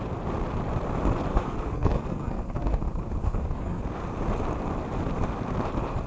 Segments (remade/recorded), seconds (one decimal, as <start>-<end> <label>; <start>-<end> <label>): 0.0-1.3 recorded; 1.3-2.8 remade; 2.8-3.2 recorded; 3.2-3.8 remade; 3.8-6.1 recorded